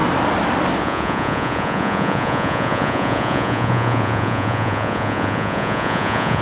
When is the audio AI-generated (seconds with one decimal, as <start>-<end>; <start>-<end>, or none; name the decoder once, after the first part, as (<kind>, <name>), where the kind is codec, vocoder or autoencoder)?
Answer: 0.8-6.4 (vocoder, Vocos)